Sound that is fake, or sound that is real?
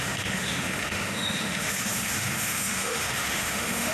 fake